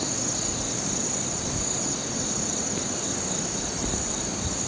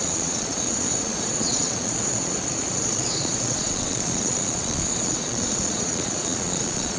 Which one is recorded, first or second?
first